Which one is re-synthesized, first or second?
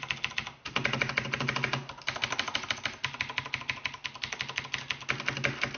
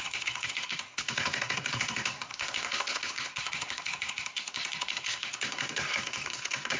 second